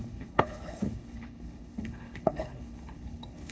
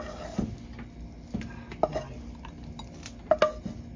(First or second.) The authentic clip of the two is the second